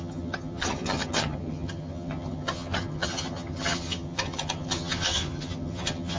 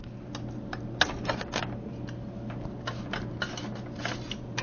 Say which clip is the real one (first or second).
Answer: second